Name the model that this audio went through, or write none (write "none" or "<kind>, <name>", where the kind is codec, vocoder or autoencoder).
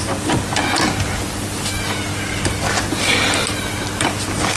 none